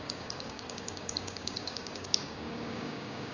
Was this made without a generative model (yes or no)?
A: no